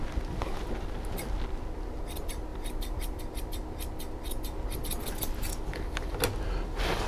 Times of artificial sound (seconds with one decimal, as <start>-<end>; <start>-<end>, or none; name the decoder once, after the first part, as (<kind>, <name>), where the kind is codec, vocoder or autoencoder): 2.5-3.2 (vocoder, BigVGAN v2); 4.8-6.2